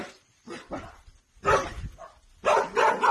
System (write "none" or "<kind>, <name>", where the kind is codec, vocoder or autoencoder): none